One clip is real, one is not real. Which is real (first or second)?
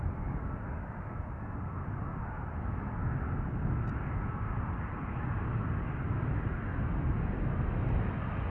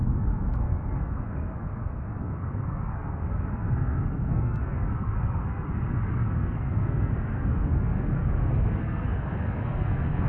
first